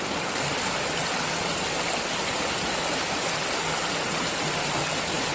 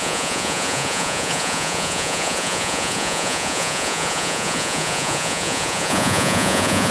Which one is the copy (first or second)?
second